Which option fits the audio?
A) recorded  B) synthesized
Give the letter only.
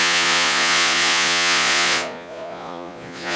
B